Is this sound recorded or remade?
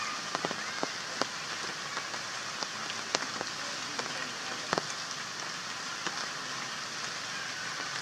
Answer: recorded